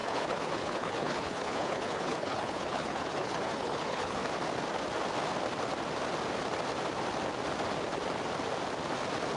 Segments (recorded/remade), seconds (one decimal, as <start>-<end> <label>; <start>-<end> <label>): 0.0-4.2 remade; 4.2-9.4 recorded